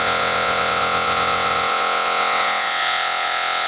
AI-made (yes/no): yes